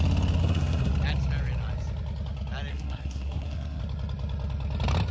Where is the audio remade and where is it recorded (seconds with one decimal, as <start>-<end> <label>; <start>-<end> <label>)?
0.0-0.4 recorded; 0.4-0.9 remade; 0.9-2.7 recorded; 2.7-3.8 remade; 3.8-5.1 recorded